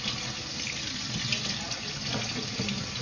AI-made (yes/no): no